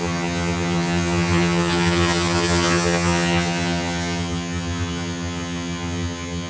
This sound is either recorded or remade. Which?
remade